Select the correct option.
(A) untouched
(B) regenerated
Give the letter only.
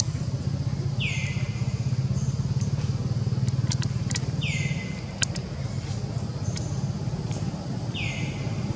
A